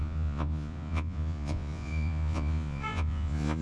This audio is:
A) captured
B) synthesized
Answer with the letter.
B